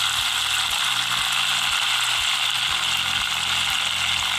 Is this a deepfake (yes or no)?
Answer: no